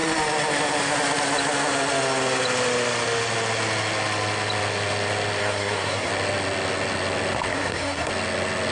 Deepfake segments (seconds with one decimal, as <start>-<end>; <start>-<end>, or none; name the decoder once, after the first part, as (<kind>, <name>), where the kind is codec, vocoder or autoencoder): 5.4-6.1 (codec, SNAC); 7.5-8.1